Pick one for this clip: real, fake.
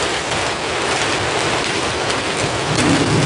real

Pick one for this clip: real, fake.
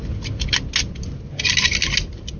real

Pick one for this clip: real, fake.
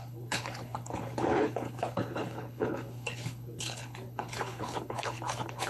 fake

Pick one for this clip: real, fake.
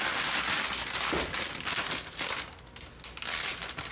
real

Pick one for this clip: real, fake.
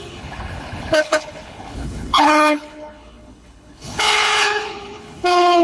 fake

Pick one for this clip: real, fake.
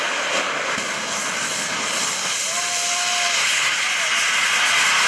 real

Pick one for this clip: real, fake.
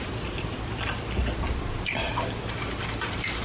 real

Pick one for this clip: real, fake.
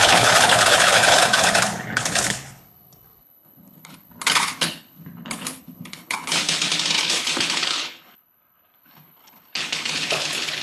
fake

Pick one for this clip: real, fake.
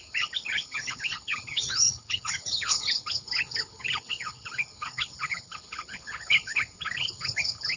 fake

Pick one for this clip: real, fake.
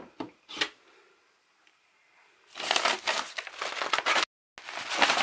real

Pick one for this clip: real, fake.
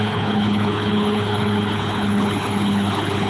fake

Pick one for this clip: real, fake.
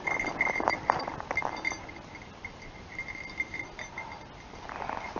real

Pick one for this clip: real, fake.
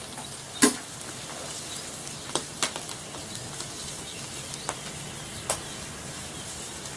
real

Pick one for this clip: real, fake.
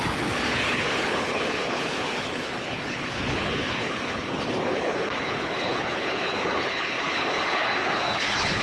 fake